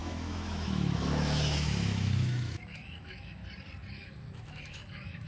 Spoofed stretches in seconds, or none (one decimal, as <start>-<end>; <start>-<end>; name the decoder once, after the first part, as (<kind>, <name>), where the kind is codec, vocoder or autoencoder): 0.0-3.4 (autoencoder, DAC-VAE); 3.9-5.3